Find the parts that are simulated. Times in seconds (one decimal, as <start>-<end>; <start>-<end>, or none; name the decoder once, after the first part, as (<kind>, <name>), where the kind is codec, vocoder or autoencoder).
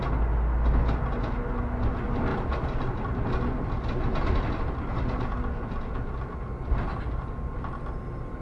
none